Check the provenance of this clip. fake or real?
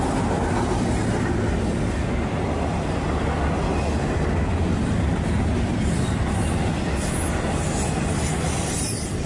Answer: real